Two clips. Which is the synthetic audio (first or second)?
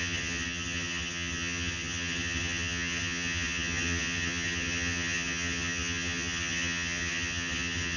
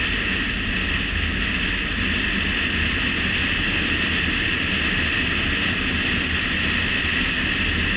first